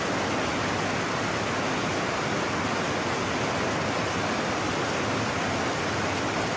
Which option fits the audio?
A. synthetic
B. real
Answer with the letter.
B